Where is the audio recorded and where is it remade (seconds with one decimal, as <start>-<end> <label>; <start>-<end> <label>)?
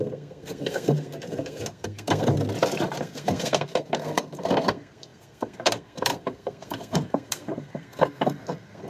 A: 0.0-2.3 remade; 2.3-3.0 recorded; 3.0-8.9 remade